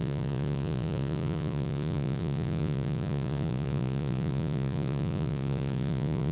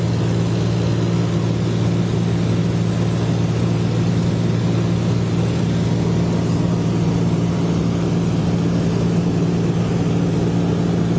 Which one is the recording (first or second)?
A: second